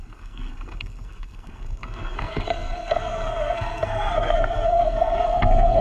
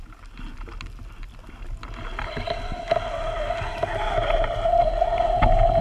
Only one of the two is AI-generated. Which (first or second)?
first